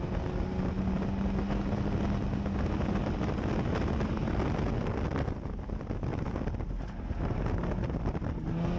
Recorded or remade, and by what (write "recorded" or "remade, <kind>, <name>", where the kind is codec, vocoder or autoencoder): recorded